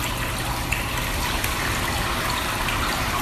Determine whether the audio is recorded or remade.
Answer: recorded